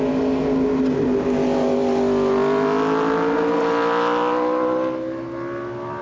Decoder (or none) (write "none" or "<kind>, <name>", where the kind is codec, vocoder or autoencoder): none